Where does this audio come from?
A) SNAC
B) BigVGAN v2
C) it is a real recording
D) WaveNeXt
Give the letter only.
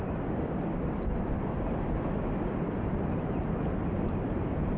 C